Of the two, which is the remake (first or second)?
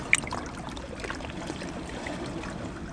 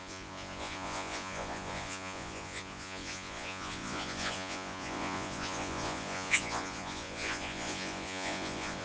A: second